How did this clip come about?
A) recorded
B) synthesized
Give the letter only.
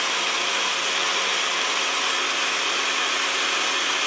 A